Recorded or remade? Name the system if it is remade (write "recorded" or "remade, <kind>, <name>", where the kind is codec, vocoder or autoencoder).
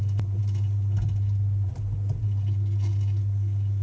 recorded